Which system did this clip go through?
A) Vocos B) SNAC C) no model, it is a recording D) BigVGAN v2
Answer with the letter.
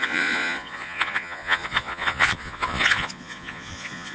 A